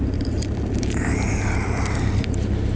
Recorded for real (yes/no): no